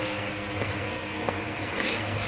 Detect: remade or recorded remade